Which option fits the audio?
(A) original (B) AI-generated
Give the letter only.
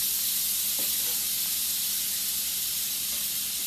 A